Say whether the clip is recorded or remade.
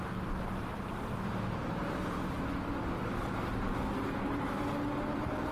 recorded